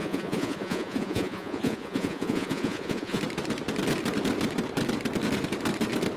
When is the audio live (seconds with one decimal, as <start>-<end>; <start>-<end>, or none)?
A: 3.2-6.2